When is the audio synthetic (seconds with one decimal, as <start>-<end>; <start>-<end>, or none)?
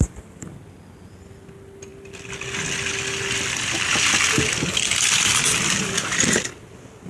none